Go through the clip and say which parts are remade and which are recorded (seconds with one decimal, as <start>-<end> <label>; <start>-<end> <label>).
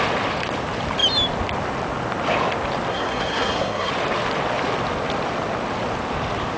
0.0-2.9 recorded; 2.9-3.9 remade; 3.9-6.6 recorded